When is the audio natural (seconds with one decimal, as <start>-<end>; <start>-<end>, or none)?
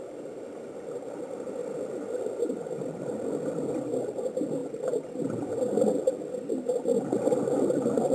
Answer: 0.0-8.1